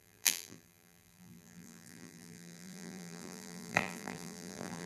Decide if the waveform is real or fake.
fake